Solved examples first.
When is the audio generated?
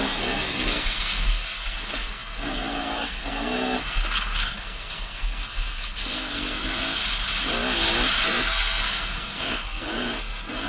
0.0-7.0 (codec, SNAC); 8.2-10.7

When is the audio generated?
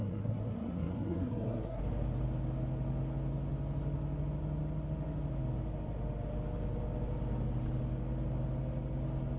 0.0-1.8 (codec, SNAC)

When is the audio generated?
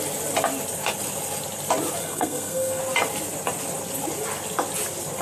2.0-2.8 (codec, SNAC)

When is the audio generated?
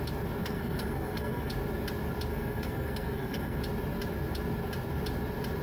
0.4-1.5 (codec, SNAC); 2.3-3.6